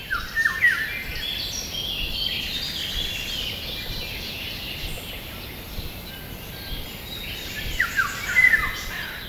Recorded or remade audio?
recorded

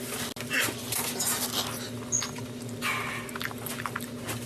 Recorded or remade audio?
recorded